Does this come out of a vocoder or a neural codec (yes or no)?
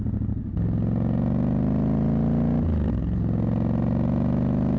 no